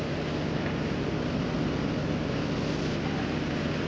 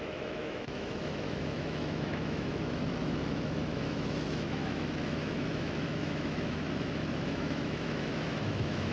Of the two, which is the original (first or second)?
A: first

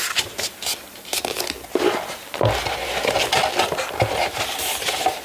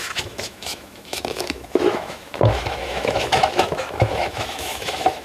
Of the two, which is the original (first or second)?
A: first